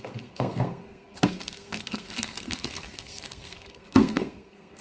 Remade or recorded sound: remade